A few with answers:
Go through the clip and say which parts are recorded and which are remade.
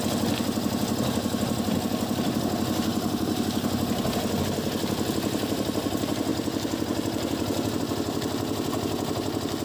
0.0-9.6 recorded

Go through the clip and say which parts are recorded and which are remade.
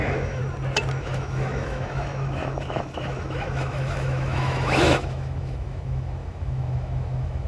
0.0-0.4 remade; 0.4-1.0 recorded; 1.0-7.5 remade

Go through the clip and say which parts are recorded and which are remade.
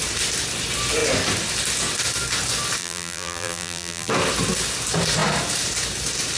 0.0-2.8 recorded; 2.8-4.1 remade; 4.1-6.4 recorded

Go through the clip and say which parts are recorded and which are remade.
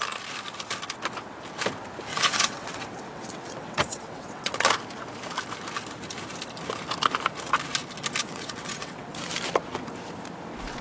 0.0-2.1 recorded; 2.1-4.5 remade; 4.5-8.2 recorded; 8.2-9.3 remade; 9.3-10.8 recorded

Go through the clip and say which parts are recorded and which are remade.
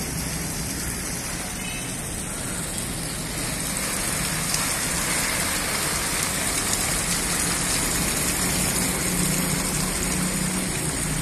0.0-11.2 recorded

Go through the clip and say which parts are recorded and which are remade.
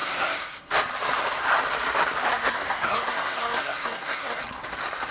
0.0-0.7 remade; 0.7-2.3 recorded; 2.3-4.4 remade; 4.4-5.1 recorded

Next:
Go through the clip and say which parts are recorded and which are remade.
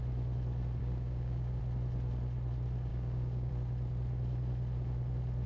0.0-0.8 recorded; 0.8-1.6 remade; 1.6-2.9 recorded; 2.9-3.5 remade; 3.5-5.5 recorded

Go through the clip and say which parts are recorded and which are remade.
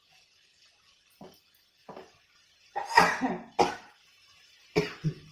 0.0-5.3 recorded